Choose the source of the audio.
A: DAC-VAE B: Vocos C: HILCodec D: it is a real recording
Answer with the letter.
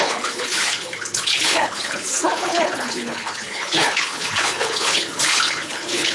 C